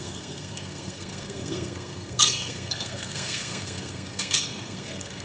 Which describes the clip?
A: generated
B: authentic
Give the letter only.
A